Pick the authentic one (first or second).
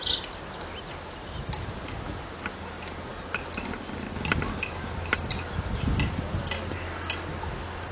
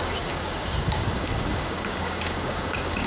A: first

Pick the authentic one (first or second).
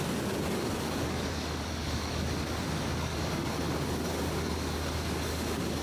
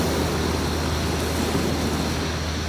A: second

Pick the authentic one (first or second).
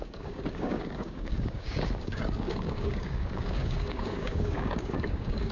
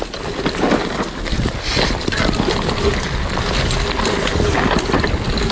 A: second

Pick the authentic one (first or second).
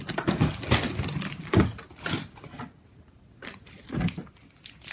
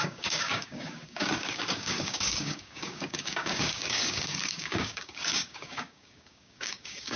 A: first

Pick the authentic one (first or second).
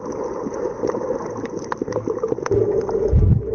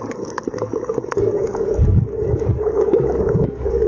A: first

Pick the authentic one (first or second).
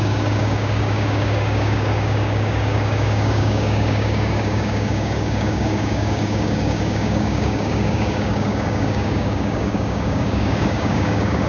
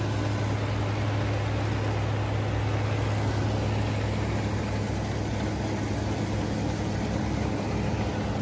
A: second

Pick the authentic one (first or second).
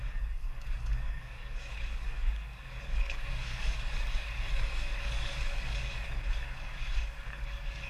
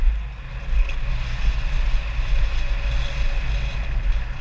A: second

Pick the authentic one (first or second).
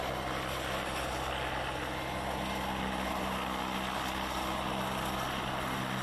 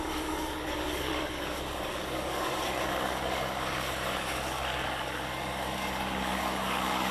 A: first